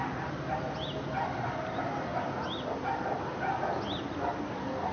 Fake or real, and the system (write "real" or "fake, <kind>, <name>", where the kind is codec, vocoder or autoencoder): real